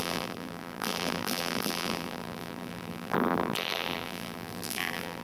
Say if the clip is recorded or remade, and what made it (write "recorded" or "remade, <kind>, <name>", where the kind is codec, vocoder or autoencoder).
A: remade, vocoder, BigVGAN v2